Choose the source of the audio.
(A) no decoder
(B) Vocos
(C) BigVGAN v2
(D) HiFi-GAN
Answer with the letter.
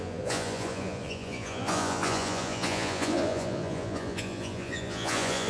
B